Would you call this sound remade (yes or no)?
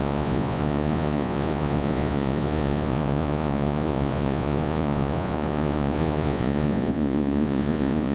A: yes